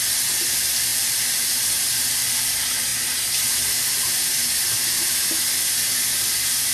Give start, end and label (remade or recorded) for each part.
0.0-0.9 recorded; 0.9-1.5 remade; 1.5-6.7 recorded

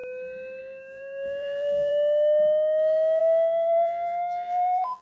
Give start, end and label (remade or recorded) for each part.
0.0-0.6 recorded; 0.6-1.9 remade; 1.9-3.2 recorded; 3.2-5.0 remade

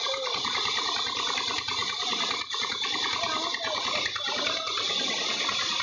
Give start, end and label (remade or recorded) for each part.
0.0-1.8 recorded; 1.8-5.3 remade; 5.3-5.8 recorded

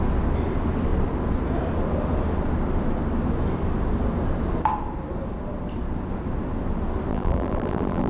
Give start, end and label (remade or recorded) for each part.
0.0-7.1 recorded; 7.1-8.1 remade

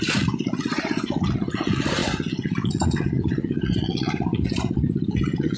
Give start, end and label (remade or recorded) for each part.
0.0-5.6 remade

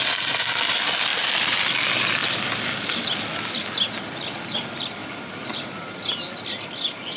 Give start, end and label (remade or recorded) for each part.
0.0-7.2 recorded

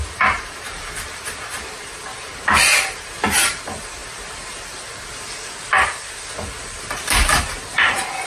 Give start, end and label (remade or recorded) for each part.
0.0-8.3 recorded